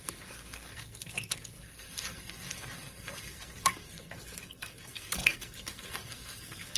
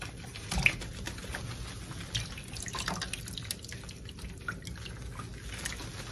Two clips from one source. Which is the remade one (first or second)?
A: first